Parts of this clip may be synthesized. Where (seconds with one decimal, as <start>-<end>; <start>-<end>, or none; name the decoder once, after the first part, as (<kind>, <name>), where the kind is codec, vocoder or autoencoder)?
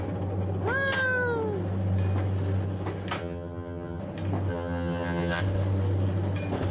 3.2-4.0 (vocoder, HiFi-GAN); 4.5-5.4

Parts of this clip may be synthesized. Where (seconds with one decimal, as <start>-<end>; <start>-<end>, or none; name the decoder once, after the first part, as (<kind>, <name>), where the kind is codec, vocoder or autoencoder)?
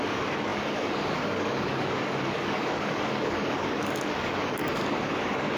0.0-5.6 (codec, DAC)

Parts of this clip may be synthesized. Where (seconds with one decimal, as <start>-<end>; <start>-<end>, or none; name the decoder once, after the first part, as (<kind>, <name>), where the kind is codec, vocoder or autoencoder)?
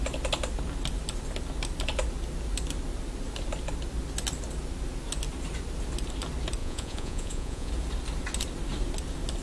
6.6-7.7 (vocoder, Vocos)